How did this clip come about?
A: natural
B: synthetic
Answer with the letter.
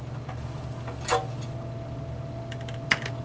A